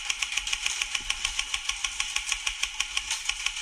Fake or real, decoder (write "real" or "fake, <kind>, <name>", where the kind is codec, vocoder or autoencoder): real